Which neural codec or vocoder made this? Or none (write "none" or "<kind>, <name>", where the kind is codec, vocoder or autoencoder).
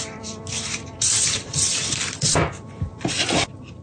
vocoder, BigVGAN v2